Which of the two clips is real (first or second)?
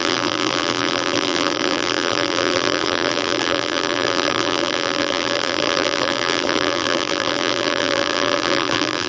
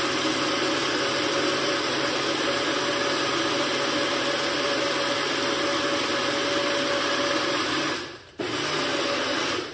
second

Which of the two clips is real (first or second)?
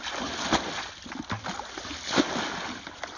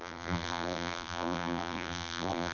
first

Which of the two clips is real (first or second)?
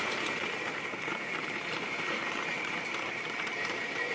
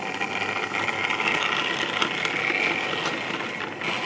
second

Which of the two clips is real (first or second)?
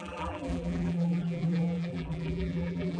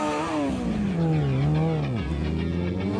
second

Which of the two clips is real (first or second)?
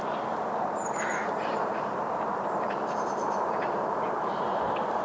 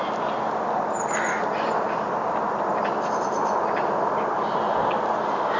second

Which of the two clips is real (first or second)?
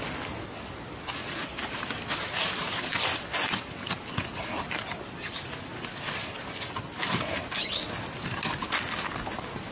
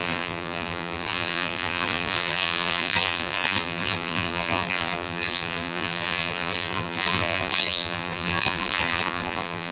first